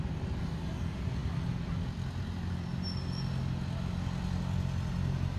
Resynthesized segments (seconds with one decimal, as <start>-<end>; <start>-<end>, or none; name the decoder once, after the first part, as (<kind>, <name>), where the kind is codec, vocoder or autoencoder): none